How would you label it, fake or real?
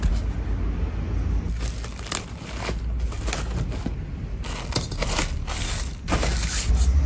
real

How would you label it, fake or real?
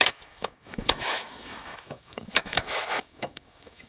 fake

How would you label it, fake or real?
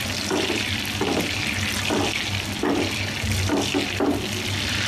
real